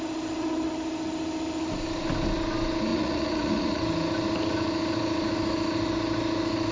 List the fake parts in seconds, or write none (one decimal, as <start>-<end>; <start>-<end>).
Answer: 2.9-3.8